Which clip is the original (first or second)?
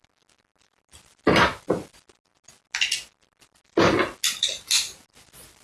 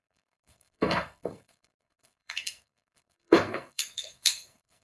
first